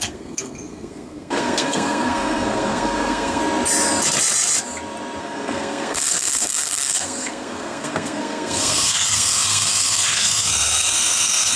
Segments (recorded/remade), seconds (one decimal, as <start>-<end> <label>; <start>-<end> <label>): 0.0-3.4 remade; 3.4-5.2 recorded; 5.2-11.6 remade